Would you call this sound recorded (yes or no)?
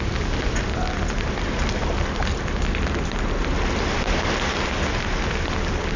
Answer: yes